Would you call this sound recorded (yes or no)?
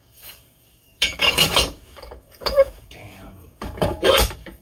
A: no